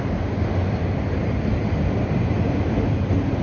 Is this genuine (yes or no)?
yes